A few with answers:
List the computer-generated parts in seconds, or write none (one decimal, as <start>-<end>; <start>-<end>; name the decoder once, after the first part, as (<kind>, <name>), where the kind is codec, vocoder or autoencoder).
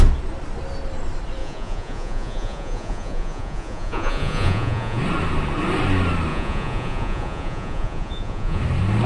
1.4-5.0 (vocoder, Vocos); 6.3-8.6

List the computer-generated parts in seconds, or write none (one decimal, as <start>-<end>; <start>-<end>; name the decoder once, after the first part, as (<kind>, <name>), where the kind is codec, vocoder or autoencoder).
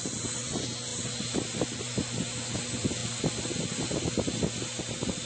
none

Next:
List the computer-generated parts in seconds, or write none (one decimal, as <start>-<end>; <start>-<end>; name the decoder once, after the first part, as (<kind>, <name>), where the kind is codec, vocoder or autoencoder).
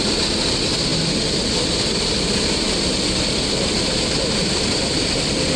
none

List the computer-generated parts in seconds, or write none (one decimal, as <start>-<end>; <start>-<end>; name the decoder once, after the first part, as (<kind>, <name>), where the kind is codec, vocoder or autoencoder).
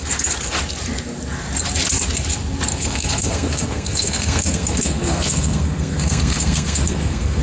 2.7-7.4 (codec, SNAC)